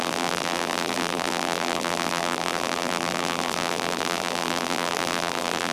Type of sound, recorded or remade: remade